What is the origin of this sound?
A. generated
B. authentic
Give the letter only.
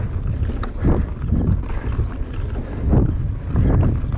B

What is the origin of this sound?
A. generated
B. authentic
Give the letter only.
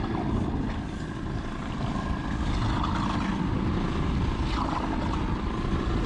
B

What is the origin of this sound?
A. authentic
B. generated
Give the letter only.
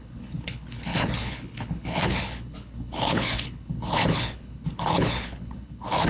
B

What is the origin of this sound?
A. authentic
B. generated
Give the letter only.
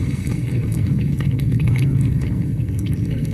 B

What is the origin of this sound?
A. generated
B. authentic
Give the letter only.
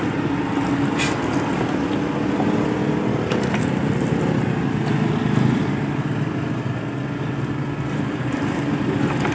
B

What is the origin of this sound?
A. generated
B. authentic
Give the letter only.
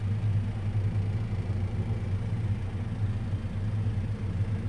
B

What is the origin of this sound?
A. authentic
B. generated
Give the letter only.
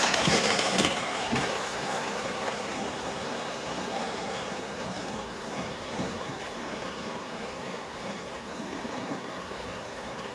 B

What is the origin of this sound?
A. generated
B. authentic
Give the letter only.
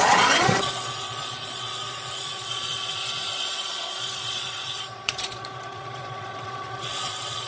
A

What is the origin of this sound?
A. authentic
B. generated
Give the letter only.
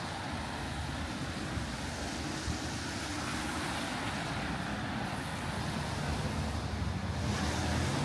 A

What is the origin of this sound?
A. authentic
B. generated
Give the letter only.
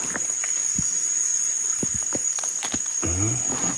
A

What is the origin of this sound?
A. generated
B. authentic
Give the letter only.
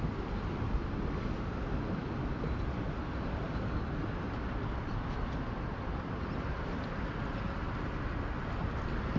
B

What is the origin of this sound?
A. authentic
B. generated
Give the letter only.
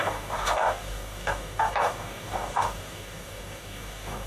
B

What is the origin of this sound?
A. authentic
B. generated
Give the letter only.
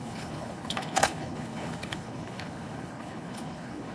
B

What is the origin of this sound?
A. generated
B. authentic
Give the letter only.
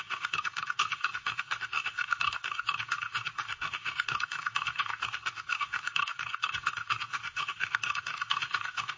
A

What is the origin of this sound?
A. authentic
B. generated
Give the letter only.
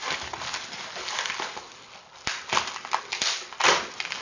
A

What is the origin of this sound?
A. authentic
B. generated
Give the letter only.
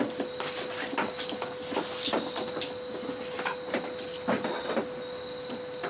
A